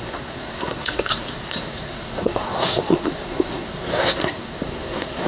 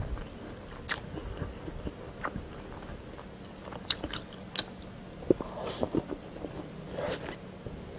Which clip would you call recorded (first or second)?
second